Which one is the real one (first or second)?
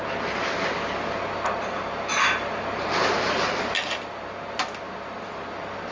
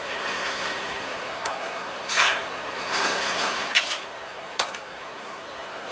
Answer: first